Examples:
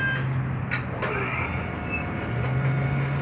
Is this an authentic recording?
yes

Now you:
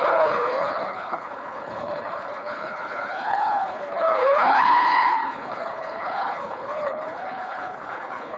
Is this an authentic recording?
no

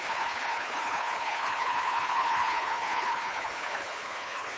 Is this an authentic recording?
no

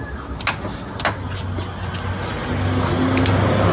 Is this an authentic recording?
yes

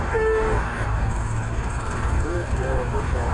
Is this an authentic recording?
no